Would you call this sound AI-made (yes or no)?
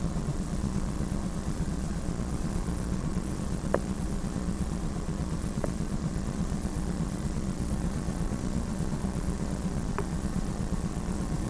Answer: yes